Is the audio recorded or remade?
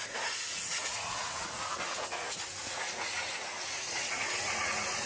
remade